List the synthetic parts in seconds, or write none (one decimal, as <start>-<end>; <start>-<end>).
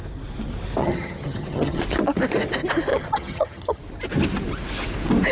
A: 0.8-1.8; 2.9-3.8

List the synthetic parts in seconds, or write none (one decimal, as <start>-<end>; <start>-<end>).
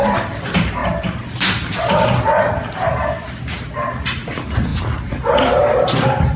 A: none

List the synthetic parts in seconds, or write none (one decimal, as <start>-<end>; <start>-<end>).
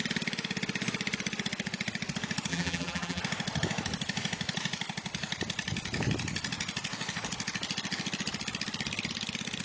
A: 2.5-3.2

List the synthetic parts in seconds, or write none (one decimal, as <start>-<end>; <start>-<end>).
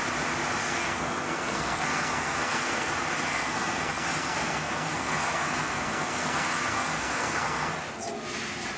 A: 0.6-2.9; 3.3-7.7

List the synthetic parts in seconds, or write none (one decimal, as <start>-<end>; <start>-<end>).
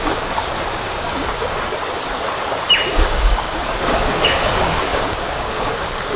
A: 0.0-1.7; 2.9-6.2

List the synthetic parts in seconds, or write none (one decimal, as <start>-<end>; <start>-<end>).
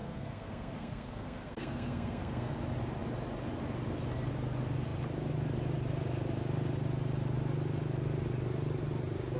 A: 0.0-2.5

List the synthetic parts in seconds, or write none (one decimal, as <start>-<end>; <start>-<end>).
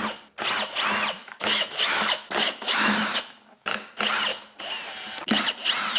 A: 1.2-3.9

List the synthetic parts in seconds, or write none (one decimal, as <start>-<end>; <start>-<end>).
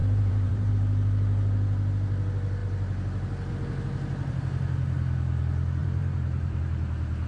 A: 0.0-0.7; 5.8-6.6